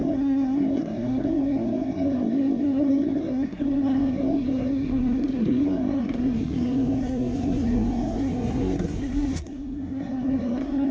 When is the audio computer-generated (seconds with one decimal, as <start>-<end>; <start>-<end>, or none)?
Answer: 0.0-10.9